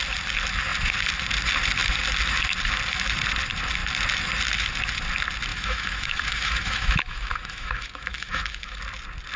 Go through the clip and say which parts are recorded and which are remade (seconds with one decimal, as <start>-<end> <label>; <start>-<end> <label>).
0.0-5.5 recorded; 5.5-8.8 remade; 8.8-9.4 recorded